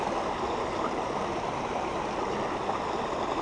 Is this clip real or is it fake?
real